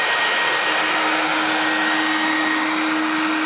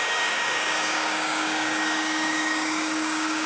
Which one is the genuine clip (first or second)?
first